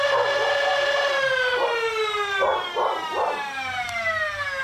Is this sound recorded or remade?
recorded